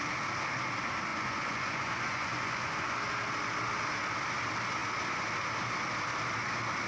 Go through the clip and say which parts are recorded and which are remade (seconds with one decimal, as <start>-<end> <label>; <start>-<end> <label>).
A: 0.0-1.1 recorded; 1.1-3.0 remade; 3.0-6.9 recorded